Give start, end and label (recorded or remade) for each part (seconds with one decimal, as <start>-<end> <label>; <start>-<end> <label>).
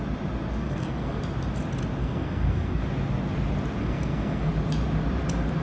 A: 0.0-0.6 recorded; 0.6-1.2 remade; 1.2-2.0 recorded; 2.0-2.8 remade; 2.8-3.8 recorded; 3.8-4.5 remade; 4.5-5.6 recorded